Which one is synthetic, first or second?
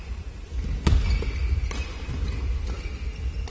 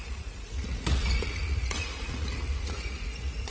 second